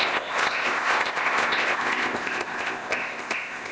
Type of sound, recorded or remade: remade